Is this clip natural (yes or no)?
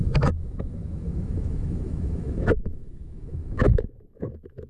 no